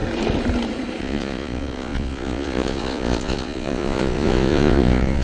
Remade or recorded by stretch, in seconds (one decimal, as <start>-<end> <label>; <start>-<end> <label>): 0.0-1.0 recorded; 1.0-5.2 remade

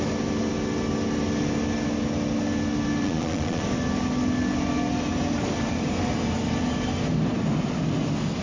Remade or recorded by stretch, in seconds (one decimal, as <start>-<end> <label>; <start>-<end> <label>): 0.0-3.0 recorded; 3.0-3.6 remade; 3.6-8.4 recorded